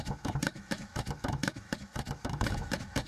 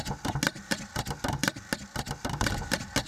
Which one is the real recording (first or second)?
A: second